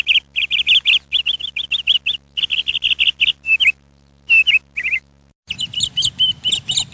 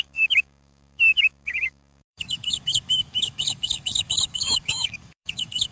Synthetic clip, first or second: second